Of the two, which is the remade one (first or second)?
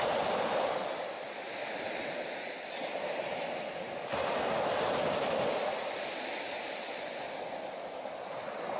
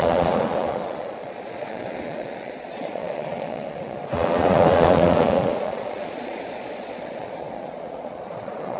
second